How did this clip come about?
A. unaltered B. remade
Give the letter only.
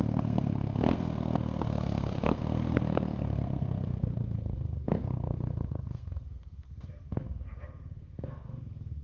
B